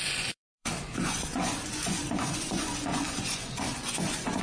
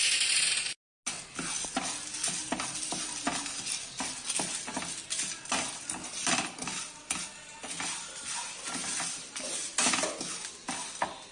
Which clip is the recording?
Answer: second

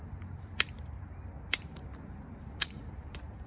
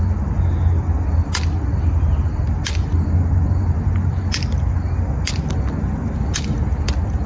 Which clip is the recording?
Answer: second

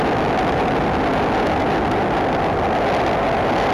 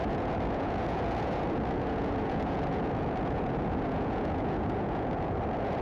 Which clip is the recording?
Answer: first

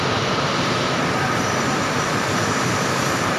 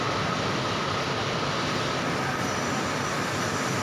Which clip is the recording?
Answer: second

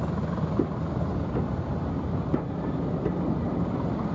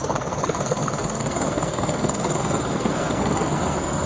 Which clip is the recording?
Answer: first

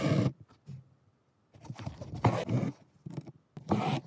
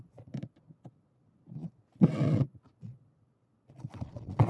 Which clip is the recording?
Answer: first